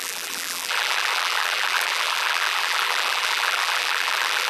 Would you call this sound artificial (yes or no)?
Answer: yes